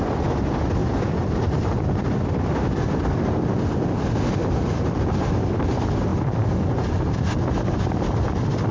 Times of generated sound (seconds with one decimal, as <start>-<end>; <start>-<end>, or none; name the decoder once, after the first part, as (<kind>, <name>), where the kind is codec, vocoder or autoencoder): 4.4-5.5 (vocoder, BigVGAN v2)